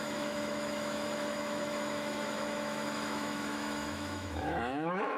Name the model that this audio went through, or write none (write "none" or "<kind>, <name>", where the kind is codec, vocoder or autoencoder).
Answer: autoencoder, DAC-VAE